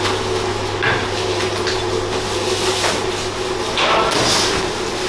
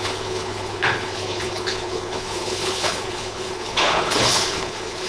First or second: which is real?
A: first